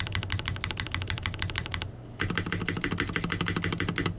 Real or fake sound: real